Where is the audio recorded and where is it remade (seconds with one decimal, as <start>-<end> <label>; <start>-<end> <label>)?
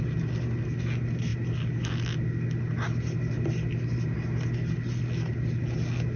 0.0-6.2 recorded